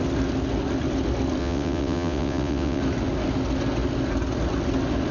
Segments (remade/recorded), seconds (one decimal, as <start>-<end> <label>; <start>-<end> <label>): 0.0-1.4 recorded; 1.4-2.8 remade; 2.8-5.1 recorded

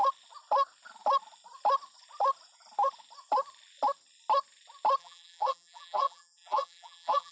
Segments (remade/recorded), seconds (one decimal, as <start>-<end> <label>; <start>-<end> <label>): 0.0-5.0 recorded; 5.0-7.3 remade

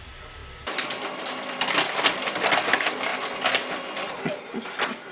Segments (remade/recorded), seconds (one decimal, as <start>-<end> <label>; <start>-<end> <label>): 0.0-5.1 recorded

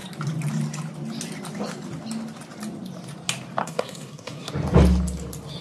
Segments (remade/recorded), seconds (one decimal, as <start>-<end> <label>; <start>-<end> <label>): 0.0-3.6 recorded; 3.6-4.5 remade; 4.5-5.6 recorded

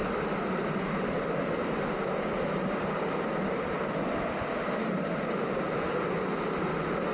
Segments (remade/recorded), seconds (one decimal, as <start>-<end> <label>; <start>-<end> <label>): 0.0-7.1 recorded